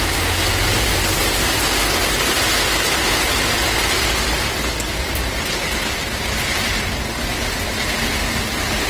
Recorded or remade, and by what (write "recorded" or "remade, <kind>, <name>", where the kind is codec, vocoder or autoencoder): recorded